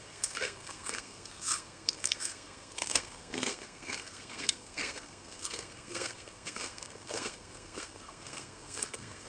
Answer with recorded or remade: remade